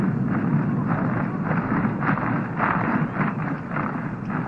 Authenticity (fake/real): real